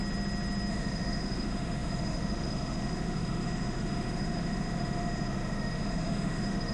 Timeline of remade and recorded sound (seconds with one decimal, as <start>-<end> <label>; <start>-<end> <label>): 0.0-0.7 recorded; 0.7-6.7 remade